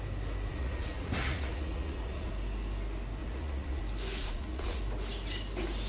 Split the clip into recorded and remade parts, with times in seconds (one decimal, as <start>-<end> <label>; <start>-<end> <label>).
0.0-0.5 recorded; 0.5-2.3 remade; 2.3-3.2 recorded; 3.2-3.8 remade; 3.8-4.2 recorded; 4.2-4.8 remade; 4.8-5.9 recorded